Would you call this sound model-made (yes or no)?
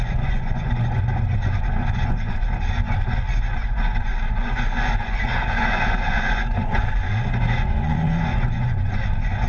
yes